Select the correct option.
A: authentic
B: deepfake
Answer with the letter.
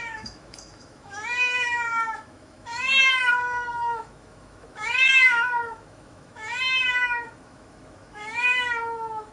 B